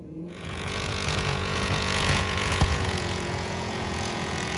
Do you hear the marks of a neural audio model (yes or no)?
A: yes